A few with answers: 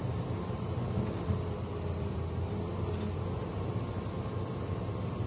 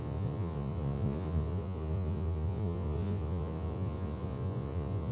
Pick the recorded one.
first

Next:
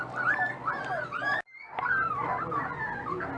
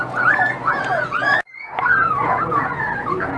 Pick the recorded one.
first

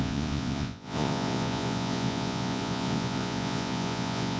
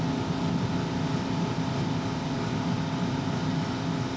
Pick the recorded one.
second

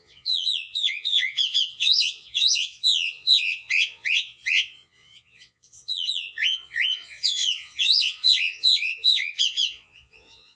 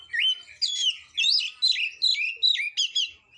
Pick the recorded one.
second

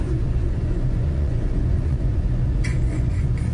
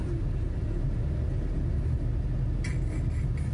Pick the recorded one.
second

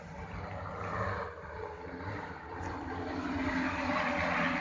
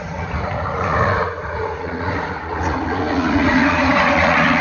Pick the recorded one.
first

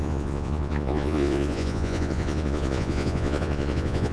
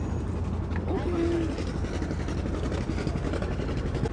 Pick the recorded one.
second